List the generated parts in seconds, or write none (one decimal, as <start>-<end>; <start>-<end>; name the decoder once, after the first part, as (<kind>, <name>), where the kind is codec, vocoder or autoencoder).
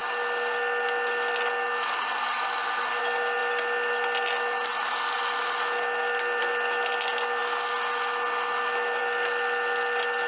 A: none